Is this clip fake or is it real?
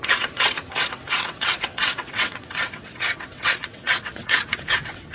fake